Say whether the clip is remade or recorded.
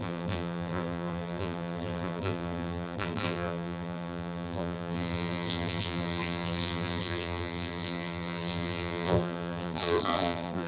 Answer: remade